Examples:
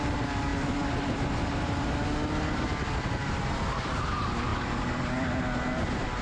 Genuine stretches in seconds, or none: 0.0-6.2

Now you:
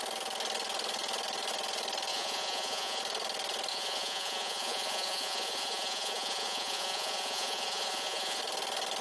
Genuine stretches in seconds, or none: 0.0-2.1; 3.0-3.7; 8.4-9.0

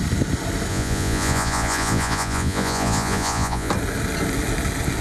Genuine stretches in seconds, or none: 0.0-0.7; 3.7-5.0

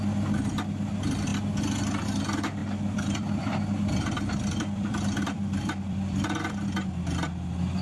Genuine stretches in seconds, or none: 0.0-1.3; 1.8-2.6; 6.5-7.8

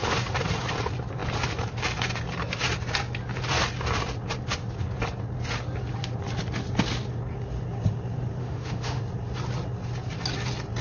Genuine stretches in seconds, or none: 0.0-8.4; 9.0-10.8